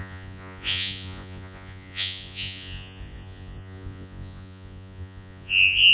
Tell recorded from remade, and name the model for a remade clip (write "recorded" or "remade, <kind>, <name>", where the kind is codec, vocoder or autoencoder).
remade, vocoder, Vocos